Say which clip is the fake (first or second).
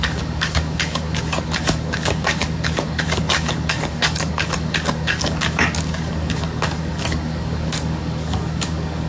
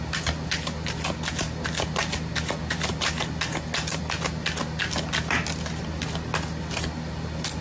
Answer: first